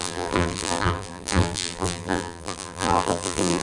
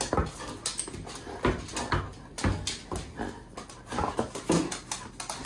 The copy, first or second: first